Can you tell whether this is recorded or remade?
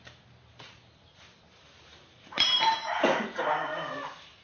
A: remade